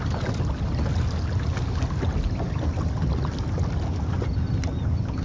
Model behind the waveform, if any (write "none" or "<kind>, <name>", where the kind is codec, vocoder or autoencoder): none